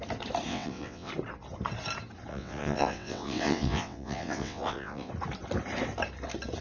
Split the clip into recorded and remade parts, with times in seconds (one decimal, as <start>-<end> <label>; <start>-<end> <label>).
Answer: 0.0-0.5 recorded; 0.5-1.1 remade; 1.1-2.3 recorded; 2.3-5.1 remade; 5.1-6.6 recorded